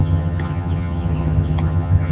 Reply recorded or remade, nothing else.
remade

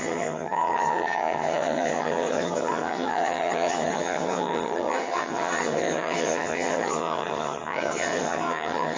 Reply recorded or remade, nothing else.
remade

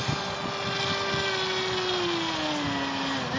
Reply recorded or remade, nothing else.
recorded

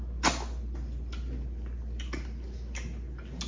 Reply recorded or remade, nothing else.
recorded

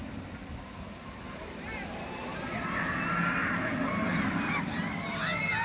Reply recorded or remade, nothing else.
recorded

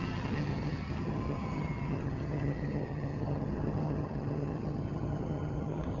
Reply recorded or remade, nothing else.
remade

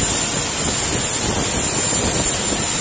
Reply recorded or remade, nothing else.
recorded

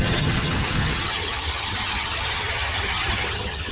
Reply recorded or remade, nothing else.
remade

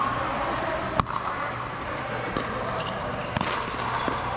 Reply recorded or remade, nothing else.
recorded